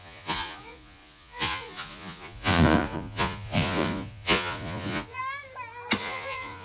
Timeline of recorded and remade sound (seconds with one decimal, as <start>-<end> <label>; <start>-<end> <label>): 0.0-5.2 remade; 5.2-6.0 recorded; 6.0-6.6 remade